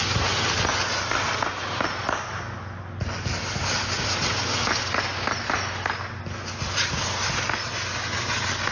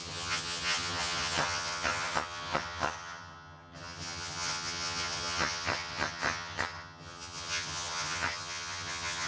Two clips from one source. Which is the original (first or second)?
first